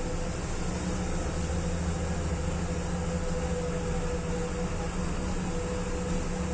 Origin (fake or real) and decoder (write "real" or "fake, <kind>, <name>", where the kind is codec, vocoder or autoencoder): real